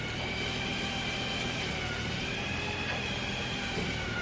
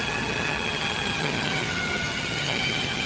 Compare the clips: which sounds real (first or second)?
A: first